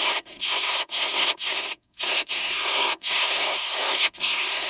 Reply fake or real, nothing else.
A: fake